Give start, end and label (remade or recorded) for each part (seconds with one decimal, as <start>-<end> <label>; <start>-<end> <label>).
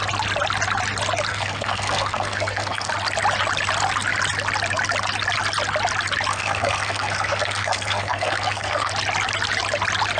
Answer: 0.0-1.3 recorded; 1.3-2.9 remade; 2.9-6.3 recorded; 6.3-8.9 remade; 8.9-10.2 recorded